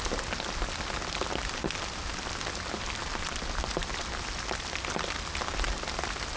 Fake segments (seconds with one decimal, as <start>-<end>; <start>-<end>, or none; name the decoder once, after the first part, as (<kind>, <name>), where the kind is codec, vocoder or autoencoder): none